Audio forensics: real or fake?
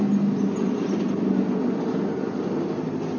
real